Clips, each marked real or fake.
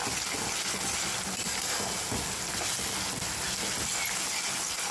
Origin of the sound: real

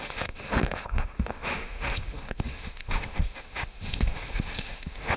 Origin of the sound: fake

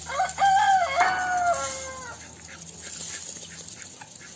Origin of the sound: real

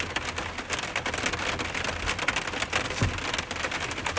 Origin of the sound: real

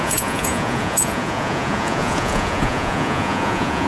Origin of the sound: fake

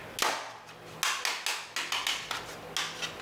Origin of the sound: real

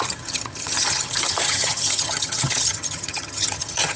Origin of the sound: fake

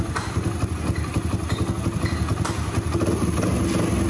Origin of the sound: real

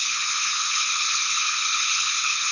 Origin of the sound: fake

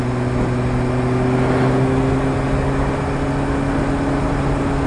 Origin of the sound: real